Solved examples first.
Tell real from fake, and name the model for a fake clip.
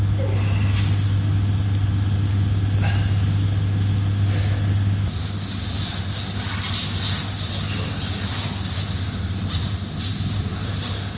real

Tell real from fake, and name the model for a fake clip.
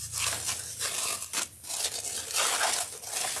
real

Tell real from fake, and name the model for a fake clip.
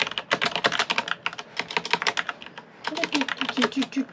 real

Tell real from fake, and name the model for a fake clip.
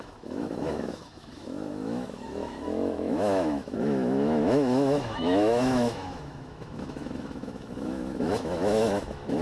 fake, autoencoder, DAC-VAE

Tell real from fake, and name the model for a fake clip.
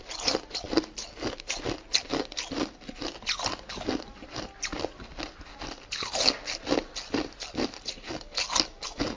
real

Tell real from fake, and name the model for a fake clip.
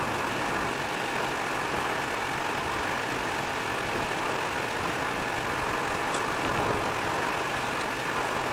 real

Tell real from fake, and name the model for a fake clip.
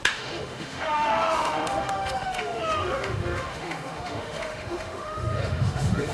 fake, autoencoder, DAC-VAE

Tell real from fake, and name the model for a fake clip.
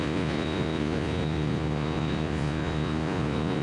fake, vocoder, Vocos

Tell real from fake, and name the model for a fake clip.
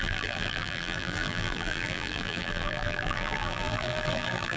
fake, vocoder, BigVGAN v2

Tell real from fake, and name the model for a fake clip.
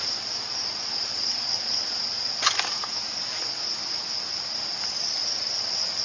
real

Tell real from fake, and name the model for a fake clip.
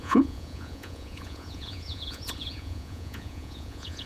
fake, vocoder, Vocos